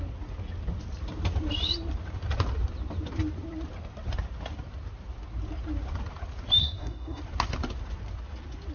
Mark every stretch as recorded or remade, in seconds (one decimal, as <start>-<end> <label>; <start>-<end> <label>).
0.0-6.6 recorded; 6.6-7.2 remade; 7.2-8.7 recorded